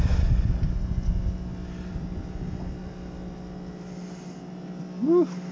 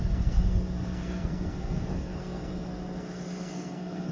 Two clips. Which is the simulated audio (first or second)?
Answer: second